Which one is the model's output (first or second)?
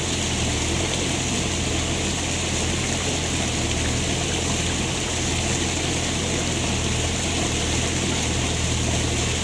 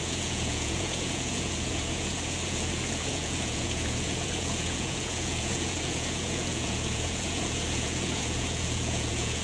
second